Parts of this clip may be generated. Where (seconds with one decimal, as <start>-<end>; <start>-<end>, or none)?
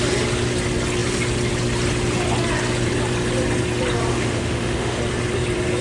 4.1-5.0